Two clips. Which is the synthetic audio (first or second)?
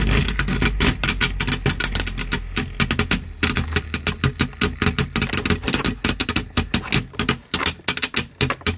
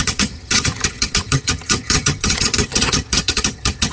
second